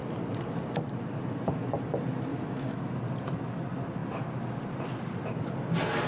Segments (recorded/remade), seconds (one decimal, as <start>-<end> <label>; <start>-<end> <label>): 0.0-2.3 recorded; 2.3-3.0 remade; 3.0-6.1 recorded